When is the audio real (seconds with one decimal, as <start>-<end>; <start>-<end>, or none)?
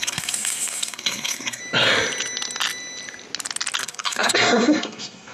1.6-3.8